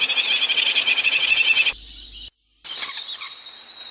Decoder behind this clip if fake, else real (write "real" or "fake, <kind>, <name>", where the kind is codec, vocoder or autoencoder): real